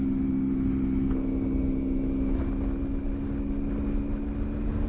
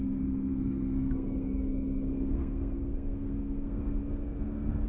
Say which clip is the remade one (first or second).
second